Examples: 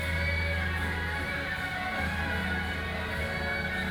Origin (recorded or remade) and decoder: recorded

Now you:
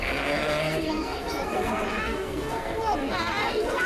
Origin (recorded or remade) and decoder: remade, codec, SNAC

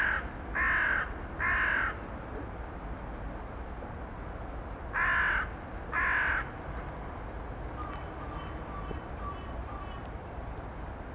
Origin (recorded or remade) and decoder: recorded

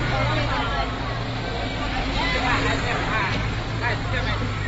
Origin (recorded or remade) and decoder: recorded